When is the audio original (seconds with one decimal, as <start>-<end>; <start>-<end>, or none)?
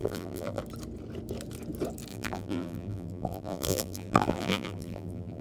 0.6-2.1